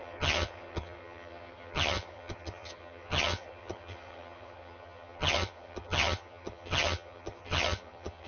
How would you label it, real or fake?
fake